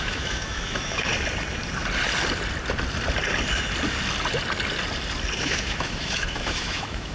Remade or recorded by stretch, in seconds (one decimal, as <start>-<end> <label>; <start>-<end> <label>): 0.0-1.1 remade; 1.1-5.4 recorded; 5.4-7.1 remade